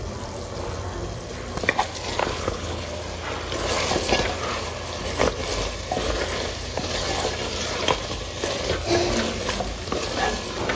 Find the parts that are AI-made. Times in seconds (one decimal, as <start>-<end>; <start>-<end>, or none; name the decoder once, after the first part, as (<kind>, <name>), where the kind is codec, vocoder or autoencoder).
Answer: 2.2-2.9 (codec, HILCodec)